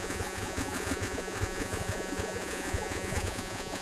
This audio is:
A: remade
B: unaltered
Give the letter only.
A